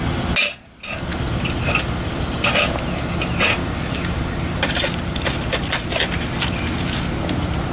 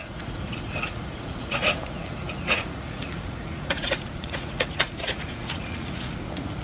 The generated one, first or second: second